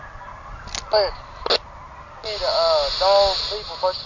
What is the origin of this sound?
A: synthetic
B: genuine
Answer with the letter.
B